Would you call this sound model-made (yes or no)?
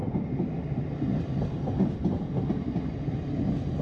no